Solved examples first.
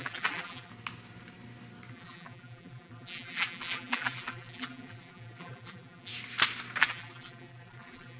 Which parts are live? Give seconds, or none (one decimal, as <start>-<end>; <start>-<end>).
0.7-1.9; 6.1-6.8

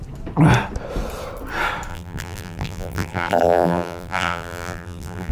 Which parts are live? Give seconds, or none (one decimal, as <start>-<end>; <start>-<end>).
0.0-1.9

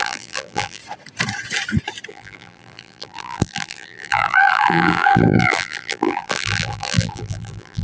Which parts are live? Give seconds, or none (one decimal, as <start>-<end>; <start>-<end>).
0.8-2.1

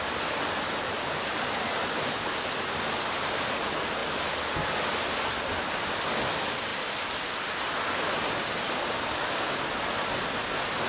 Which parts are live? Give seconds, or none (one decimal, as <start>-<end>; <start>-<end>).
0.0-10.9

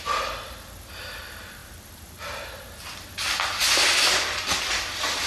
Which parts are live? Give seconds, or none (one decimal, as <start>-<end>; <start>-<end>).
0.0-5.3

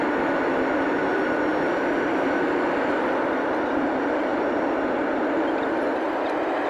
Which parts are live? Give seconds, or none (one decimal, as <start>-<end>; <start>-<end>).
0.0-4.3; 5.6-6.7

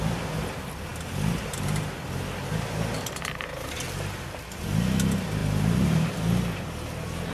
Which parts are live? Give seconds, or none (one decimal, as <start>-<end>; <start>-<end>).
0.0-5.4; 6.1-7.3

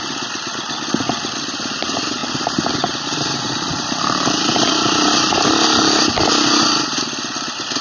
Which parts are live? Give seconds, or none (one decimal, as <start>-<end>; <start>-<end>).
0.0-2.2; 6.0-7.8